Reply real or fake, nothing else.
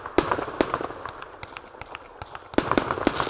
real